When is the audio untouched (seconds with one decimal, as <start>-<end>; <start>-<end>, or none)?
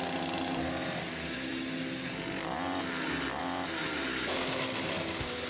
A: 0.0-5.5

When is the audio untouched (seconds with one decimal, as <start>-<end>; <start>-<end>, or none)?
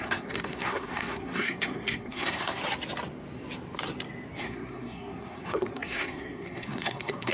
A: 2.6-4.4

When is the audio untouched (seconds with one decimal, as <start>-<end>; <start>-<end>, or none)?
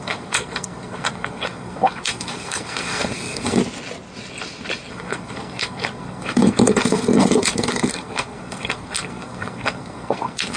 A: 3.6-4.9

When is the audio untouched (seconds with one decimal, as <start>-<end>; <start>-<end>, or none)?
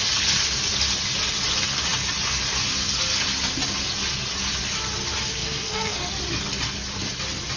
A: 0.0-5.4; 6.1-7.6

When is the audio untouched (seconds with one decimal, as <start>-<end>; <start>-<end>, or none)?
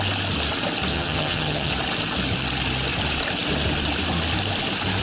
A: 0.0-0.9; 1.7-5.0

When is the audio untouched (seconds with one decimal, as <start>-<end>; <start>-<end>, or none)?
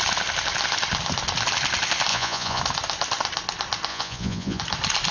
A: 0.0-2.1; 2.6-3.9; 4.6-5.1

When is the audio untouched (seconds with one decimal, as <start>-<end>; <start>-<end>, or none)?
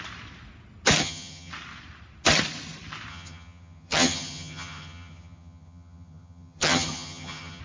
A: 0.0-1.0; 1.5-3.1